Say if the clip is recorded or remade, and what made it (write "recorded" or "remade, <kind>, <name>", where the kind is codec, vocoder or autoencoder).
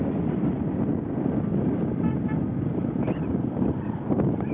recorded